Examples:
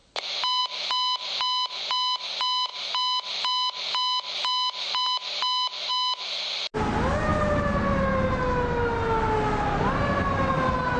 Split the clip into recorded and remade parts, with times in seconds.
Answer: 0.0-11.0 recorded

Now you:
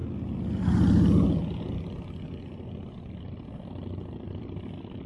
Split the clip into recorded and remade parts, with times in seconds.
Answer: 0.0-5.1 recorded